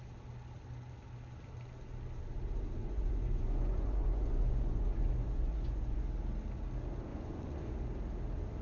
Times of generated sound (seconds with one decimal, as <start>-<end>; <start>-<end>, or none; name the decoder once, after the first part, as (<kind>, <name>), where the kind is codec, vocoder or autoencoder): 2.8-6.0 (vocoder, Vocos); 7.1-7.7